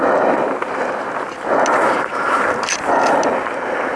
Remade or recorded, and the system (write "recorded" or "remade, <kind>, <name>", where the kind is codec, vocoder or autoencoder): recorded